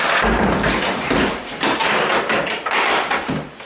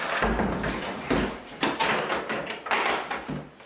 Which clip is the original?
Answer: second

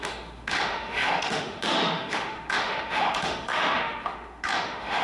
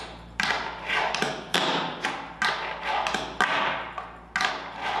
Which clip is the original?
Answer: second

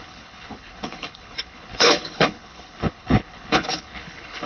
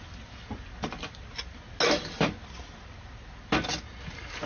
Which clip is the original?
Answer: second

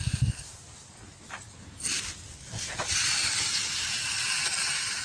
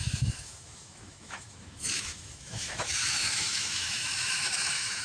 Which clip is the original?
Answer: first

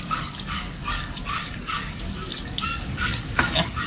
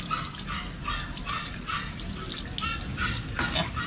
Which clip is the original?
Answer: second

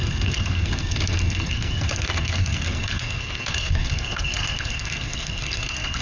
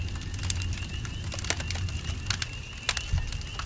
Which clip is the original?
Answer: second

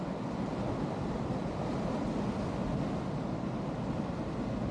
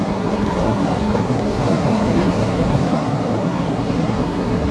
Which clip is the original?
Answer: first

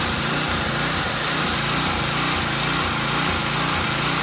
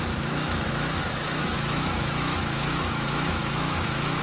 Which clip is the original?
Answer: first